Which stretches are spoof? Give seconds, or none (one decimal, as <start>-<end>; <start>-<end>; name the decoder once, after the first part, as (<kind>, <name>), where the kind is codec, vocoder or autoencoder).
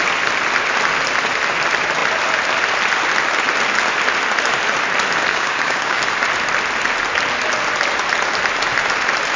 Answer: 5.3-6.0 (codec, DAC)